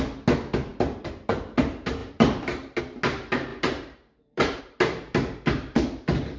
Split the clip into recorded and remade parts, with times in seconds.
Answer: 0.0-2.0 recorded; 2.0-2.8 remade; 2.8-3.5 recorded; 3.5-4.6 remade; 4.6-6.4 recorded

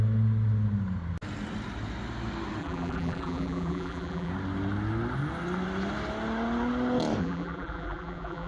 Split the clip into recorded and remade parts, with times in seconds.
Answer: 0.0-2.6 recorded; 2.6-4.3 remade; 4.3-7.2 recorded; 7.2-8.5 remade

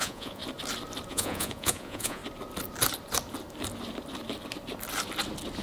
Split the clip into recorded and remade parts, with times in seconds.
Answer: 0.0-0.4 remade; 0.4-1.1 recorded; 1.1-2.2 remade; 2.2-5.6 recorded

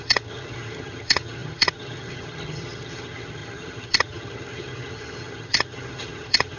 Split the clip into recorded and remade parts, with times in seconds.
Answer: 0.0-6.6 remade

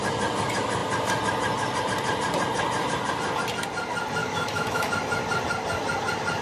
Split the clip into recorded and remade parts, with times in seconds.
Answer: 0.0-4.2 recorded; 4.2-4.9 remade; 4.9-6.4 recorded

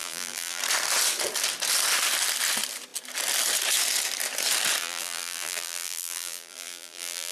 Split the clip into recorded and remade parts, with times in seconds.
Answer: 0.0-0.6 remade; 0.6-4.8 recorded; 4.8-7.3 remade